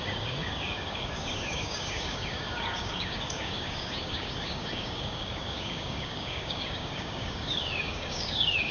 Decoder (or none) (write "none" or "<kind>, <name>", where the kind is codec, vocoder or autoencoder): codec, DAC